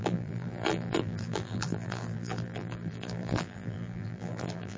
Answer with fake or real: fake